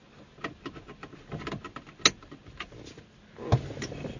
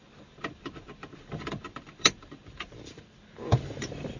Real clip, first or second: first